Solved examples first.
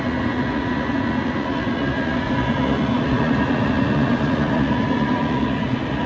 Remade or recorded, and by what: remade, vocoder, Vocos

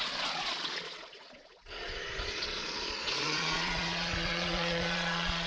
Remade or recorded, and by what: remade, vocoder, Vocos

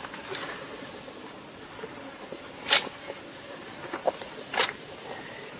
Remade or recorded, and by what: recorded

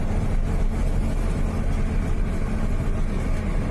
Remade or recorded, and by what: recorded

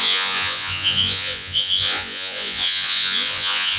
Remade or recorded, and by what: remade, vocoder, Vocos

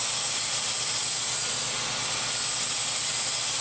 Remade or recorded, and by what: recorded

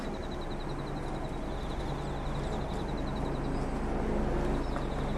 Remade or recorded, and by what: recorded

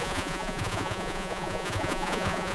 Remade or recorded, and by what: remade, vocoder, Vocos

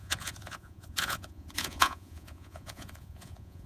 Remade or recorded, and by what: remade, vocoder, Vocos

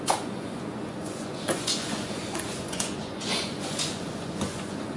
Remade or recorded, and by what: remade, vocoder, Vocos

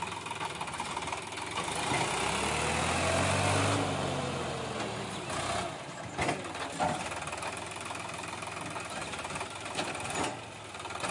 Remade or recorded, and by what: recorded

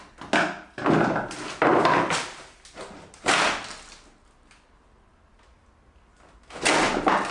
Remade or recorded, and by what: recorded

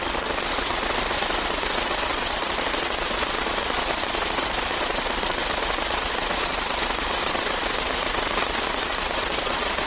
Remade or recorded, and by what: remade, vocoder, Vocos